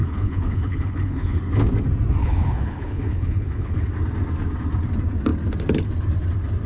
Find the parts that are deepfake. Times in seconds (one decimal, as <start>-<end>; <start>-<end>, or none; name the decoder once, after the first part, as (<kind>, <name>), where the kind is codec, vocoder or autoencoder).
0.0-1.4 (codec, HILCodec); 2.2-3.9